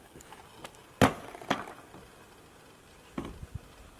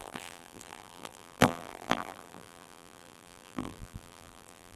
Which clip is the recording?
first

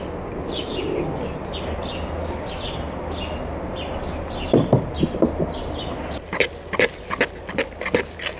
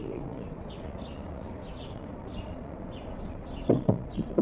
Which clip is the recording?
first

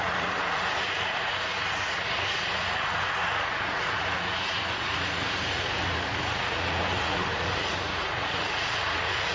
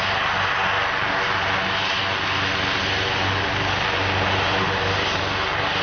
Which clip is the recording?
second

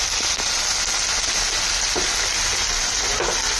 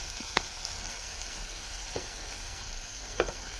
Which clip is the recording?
first